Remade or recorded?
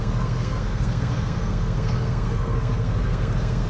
remade